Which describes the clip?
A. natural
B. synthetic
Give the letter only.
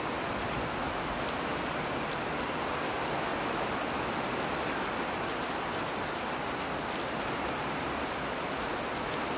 A